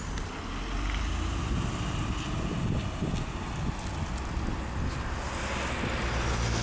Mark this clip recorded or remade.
recorded